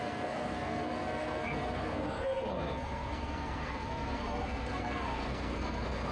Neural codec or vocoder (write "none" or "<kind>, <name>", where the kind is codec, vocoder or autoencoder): codec, SNAC